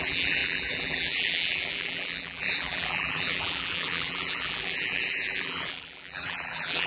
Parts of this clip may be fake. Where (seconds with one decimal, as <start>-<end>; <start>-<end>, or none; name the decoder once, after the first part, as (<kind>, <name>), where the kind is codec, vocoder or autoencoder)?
0.0-6.9 (vocoder, BigVGAN v2)